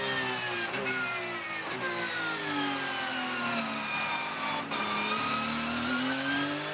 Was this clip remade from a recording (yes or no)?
no